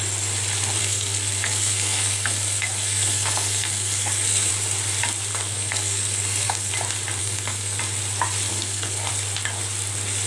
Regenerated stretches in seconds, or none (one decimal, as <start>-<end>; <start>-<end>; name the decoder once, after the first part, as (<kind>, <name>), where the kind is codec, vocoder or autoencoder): 0.8-4.5 (codec, SNAC); 5.3-6.7; 7.2-7.8; 8.5-9.1

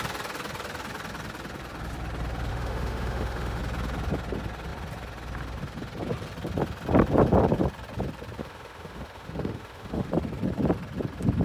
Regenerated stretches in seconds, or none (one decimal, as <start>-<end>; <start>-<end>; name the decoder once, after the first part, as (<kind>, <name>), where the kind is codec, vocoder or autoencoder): 2.5-3.6 (autoencoder, DAC-VAE); 8.4-10.1

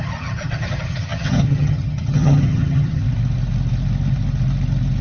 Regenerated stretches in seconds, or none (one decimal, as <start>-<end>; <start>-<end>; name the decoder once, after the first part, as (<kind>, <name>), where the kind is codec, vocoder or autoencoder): 0.0-3.0 (vocoder, HiFi-GAN)

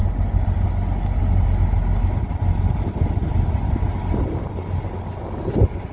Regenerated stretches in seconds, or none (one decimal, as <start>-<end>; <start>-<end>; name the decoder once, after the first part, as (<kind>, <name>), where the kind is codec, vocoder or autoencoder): none

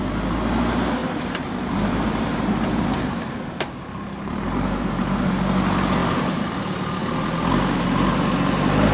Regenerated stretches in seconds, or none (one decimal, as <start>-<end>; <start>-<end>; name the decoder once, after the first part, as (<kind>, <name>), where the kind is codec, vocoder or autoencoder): 1.0-5.3 (vocoder, BigVGAN v2); 6.0-6.6

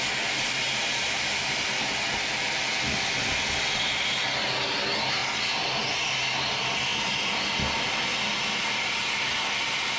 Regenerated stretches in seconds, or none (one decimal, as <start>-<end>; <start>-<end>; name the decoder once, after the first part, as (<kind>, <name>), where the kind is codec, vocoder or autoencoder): none

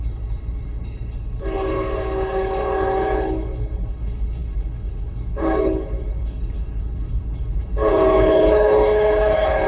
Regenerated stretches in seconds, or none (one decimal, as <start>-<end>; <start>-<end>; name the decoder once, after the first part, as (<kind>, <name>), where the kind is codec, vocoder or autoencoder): 0.0-9.7 (codec, HILCodec)

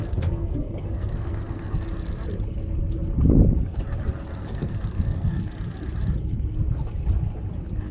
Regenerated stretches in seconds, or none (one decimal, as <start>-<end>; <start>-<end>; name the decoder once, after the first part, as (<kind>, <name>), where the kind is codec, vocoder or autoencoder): 0.0-1.7 (codec, SNAC); 4.4-5.5